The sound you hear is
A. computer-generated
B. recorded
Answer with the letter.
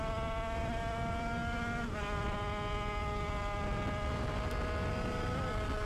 B